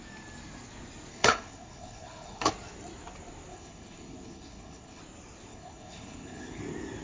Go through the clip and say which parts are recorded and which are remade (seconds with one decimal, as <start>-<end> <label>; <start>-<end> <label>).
0.0-1.1 recorded; 1.1-2.5 remade; 2.5-3.5 recorded; 3.5-5.0 remade; 5.0-5.5 recorded; 5.5-6.6 remade; 6.6-7.0 recorded